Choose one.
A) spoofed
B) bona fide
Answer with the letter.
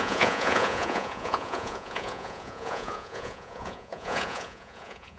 A